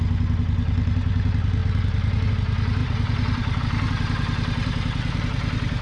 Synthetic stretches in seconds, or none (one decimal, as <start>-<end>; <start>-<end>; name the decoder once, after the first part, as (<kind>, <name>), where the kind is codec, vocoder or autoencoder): 2.8-3.6 (vocoder, BigVGAN v2)